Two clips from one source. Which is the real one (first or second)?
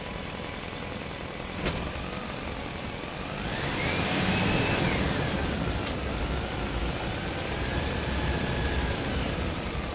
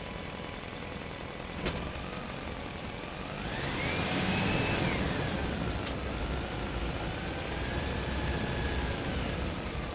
second